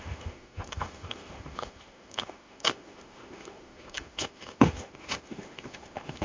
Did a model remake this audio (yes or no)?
yes